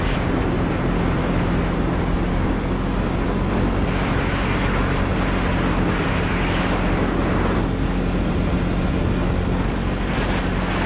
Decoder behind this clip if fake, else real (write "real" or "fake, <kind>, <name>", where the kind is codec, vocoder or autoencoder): real